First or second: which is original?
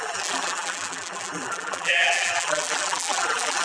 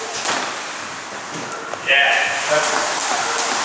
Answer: second